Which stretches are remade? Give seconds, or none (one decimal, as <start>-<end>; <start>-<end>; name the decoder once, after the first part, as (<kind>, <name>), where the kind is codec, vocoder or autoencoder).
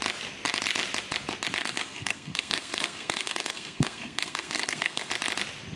1.6-5.1 (codec, SNAC)